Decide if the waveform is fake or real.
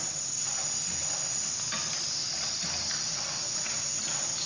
real